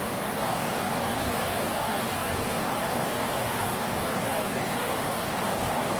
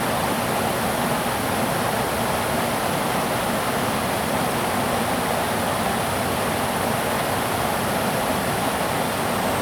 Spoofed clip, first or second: first